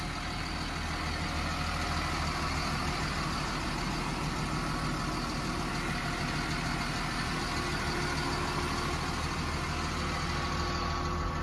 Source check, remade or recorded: recorded